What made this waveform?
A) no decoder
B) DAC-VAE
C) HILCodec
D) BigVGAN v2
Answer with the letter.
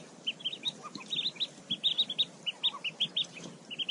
A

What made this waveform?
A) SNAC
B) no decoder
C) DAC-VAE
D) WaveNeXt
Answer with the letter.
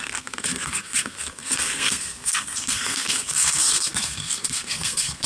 A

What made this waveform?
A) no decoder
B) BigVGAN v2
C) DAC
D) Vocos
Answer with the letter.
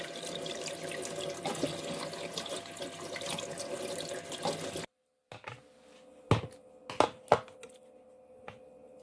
A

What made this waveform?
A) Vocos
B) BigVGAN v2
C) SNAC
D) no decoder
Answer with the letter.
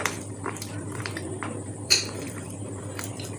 B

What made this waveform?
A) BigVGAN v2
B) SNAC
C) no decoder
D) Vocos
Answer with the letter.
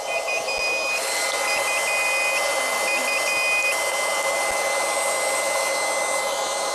C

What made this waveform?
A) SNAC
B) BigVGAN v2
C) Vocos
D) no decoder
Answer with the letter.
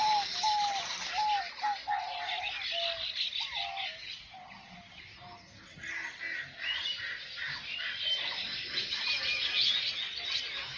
D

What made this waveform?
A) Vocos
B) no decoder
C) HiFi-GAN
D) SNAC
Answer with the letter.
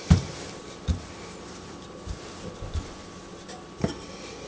B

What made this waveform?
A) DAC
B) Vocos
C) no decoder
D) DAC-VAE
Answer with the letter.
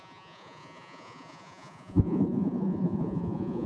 B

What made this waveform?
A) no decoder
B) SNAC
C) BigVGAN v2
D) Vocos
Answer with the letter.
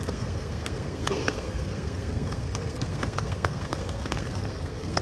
B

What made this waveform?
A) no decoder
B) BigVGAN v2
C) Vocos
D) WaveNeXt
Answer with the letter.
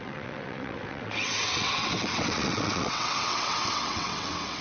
D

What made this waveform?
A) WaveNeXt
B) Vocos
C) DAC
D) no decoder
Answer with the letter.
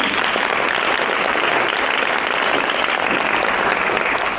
D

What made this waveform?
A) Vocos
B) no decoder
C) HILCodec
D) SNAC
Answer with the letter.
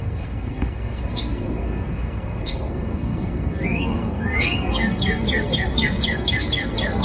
D